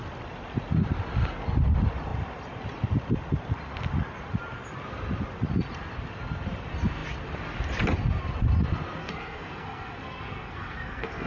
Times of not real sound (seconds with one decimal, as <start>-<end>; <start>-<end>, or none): 9.0-11.3